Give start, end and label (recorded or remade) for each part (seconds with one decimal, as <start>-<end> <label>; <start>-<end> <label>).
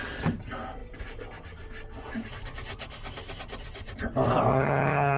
0.0-4.5 recorded; 4.5-5.2 remade